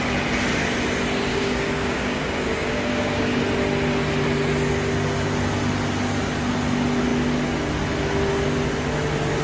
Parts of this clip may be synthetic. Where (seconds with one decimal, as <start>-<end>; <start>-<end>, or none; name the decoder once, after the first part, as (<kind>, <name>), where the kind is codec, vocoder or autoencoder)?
1.3-3.4 (codec, DAC)